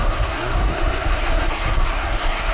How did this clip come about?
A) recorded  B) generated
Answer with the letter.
B